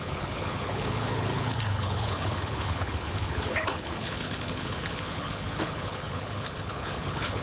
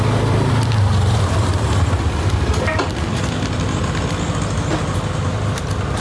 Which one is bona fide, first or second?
second